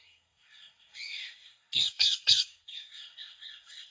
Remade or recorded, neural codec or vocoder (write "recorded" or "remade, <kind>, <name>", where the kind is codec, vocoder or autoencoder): remade, codec, SNAC